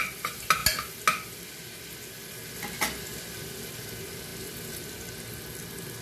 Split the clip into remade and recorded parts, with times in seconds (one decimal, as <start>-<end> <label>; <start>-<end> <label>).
0.0-6.0 recorded

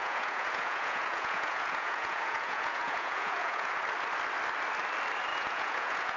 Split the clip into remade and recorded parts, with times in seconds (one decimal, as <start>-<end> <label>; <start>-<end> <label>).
0.0-3.7 remade; 3.7-5.3 recorded; 5.3-6.2 remade

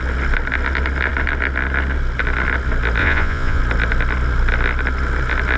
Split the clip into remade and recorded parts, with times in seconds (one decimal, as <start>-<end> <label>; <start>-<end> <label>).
0.0-3.0 recorded; 3.0-3.6 remade; 3.6-5.6 recorded

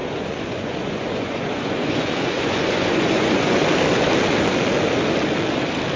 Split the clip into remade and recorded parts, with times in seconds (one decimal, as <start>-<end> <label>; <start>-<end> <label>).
0.0-3.6 remade; 3.6-6.0 recorded

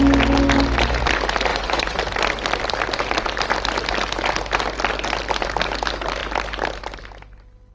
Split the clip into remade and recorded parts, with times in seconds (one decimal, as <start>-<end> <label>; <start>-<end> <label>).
0.0-1.5 recorded; 1.5-2.0 remade; 2.0-7.7 recorded

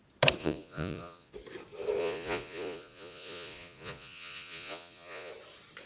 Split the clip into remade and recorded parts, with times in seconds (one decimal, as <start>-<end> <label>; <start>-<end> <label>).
0.0-0.4 recorded; 0.4-1.3 remade; 1.3-2.0 recorded; 2.0-5.3 remade; 5.3-5.9 recorded